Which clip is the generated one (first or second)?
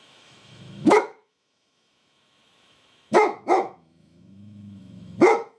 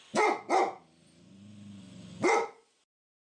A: first